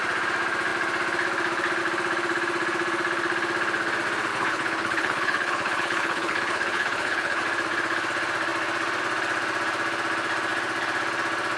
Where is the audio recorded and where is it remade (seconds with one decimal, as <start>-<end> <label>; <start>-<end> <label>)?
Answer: 0.0-4.3 recorded; 4.3-7.4 remade; 7.4-11.6 recorded